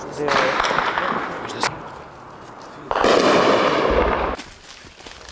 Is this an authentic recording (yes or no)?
yes